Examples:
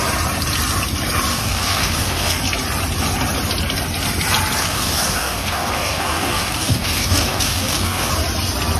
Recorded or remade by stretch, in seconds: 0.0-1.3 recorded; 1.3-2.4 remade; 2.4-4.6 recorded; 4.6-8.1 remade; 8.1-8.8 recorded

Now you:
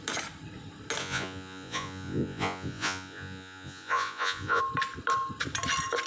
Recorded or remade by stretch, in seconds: 0.0-1.0 recorded; 1.0-4.6 remade; 4.6-6.1 recorded